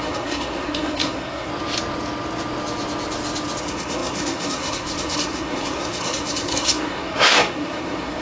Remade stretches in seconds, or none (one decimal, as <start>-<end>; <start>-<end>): 0.0-1.5; 3.6-8.2

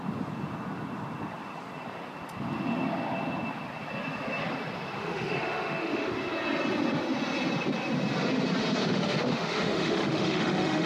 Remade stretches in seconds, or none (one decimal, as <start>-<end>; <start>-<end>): 5.0-6.1; 8.8-10.9

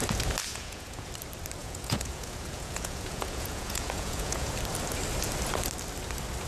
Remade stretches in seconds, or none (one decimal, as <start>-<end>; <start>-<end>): 0.5-1.1; 1.6-4.5

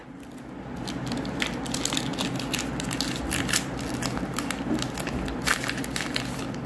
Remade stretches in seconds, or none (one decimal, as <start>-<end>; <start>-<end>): none

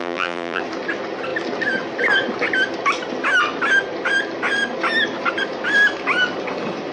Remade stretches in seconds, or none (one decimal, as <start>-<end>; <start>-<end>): 0.0-0.6

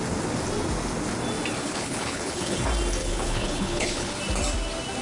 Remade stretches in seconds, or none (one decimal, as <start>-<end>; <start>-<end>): 1.6-2.6; 3.0-4.1